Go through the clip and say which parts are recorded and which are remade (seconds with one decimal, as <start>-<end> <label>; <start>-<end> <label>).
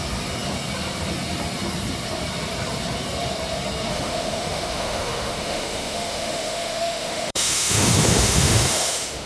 0.0-3.9 recorded; 3.9-9.3 remade